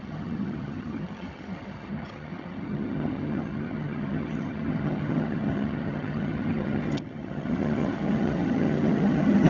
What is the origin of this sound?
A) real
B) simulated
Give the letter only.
B